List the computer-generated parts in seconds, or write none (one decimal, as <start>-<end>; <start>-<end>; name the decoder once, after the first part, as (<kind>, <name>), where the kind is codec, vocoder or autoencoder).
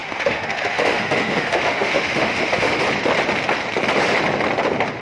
0.0-2.8 (autoencoder, DAC-VAE)